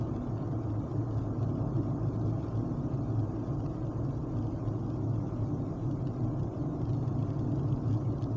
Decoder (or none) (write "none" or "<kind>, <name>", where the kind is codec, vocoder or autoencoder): none